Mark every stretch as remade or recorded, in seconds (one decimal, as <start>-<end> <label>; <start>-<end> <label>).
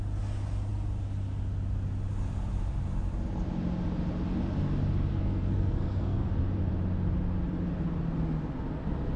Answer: 0.0-5.1 recorded; 5.1-6.3 remade; 6.3-9.2 recorded